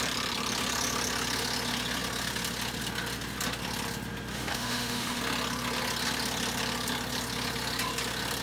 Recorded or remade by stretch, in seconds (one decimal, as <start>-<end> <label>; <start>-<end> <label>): 0.0-4.3 recorded; 4.3-5.2 remade; 5.2-8.4 recorded